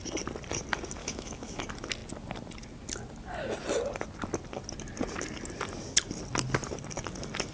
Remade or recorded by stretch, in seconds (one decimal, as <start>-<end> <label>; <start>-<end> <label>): 0.0-1.0 recorded; 1.0-1.6 remade; 1.6-7.5 recorded